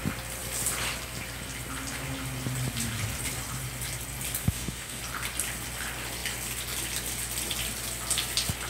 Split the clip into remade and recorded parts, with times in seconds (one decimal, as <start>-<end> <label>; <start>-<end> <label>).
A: 0.0-4.4 recorded; 4.4-5.0 remade; 5.0-8.7 recorded